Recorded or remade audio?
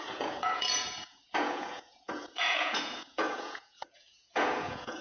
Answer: remade